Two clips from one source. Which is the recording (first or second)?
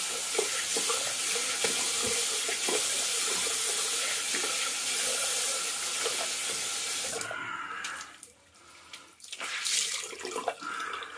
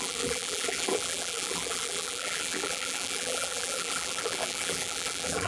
first